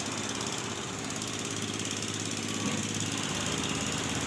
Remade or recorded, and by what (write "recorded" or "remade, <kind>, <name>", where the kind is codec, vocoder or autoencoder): recorded